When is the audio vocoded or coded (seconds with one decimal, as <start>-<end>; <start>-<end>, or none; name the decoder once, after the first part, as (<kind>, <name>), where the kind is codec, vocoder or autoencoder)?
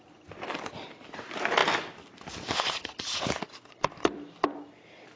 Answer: none